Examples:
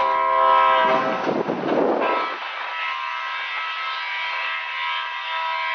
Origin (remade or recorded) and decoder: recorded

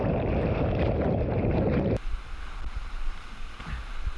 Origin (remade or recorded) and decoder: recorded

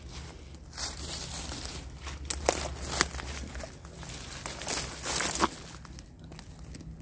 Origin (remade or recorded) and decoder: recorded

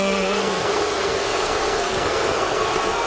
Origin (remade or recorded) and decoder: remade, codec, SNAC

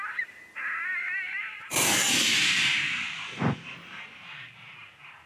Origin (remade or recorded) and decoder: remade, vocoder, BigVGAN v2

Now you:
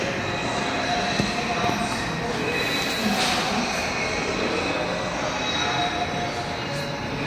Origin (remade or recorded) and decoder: recorded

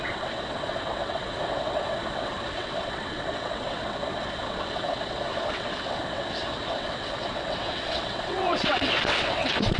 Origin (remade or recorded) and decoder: remade, vocoder, WaveNeXt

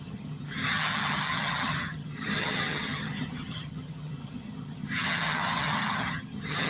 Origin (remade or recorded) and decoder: remade, vocoder, HiFi-GAN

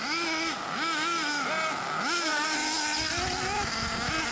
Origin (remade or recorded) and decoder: recorded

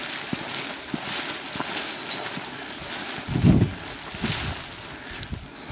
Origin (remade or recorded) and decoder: recorded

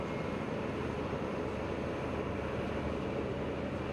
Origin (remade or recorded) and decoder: recorded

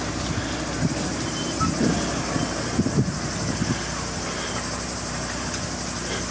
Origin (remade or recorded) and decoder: recorded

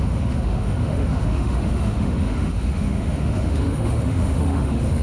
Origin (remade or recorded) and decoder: remade, autoencoder, DAC-VAE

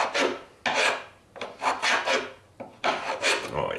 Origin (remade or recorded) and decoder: recorded